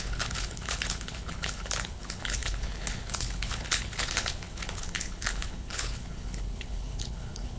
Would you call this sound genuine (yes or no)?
no